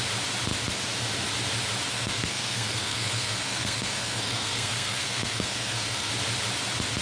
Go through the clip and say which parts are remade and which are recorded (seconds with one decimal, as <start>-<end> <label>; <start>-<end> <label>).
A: 0.0-1.9 recorded; 1.9-6.1 remade; 6.1-7.0 recorded